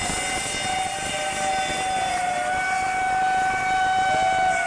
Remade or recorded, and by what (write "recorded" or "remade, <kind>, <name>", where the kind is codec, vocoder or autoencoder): recorded